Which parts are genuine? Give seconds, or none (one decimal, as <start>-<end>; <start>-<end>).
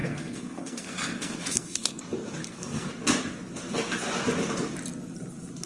2.0-2.4; 2.9-5.7